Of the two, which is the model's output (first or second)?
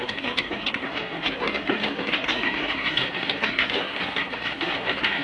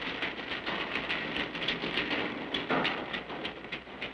first